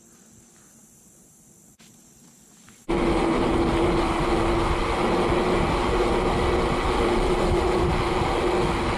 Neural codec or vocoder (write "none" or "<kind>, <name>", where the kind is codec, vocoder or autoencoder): none